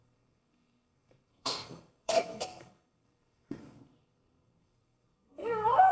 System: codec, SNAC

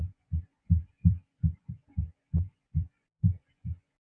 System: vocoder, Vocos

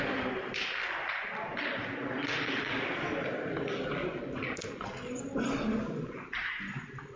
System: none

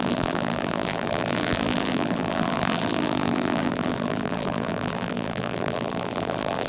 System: vocoder, BigVGAN v2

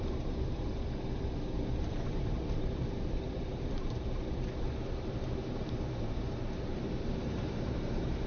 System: vocoder, BigVGAN v2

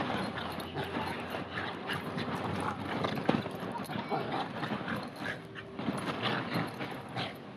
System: none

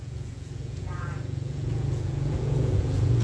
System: vocoder, Vocos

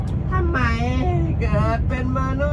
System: none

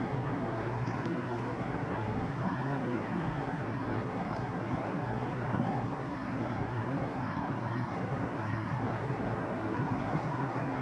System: codec, SNAC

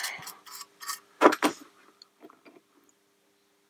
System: none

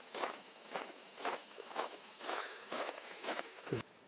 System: autoencoder, DAC-VAE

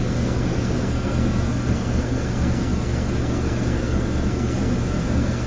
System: codec, SNAC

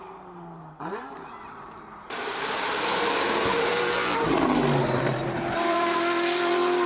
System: vocoder, BigVGAN v2